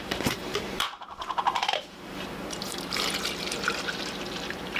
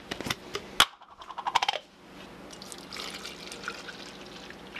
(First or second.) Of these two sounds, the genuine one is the second